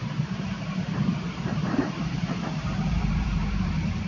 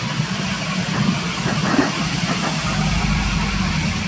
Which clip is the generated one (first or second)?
first